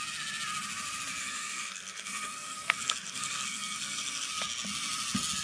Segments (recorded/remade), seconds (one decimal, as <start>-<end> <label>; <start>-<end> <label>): 0.0-1.2 recorded; 1.2-4.4 remade; 4.4-5.4 recorded